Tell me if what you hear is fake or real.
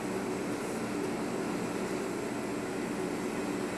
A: real